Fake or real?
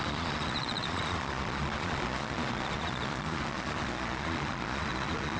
fake